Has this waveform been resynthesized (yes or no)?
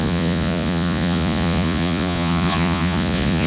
yes